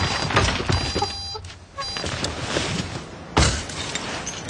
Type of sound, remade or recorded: recorded